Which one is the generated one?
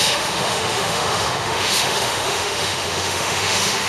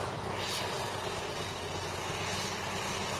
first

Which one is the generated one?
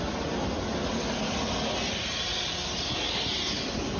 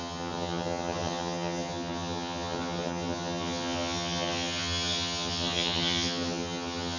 second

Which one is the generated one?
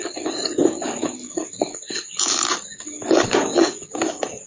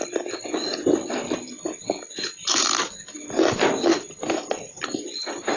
first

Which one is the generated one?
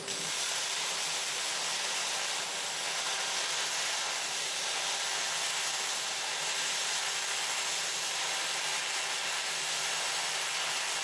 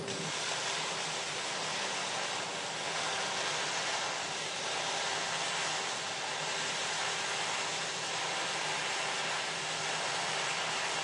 second